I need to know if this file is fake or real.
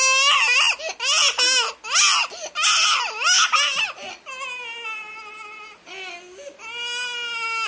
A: real